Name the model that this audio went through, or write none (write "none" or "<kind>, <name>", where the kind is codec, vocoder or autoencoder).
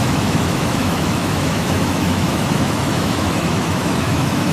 autoencoder, DAC-VAE